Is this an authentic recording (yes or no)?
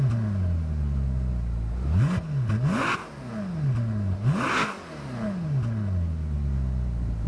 yes